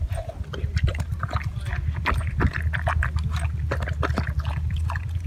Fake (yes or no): no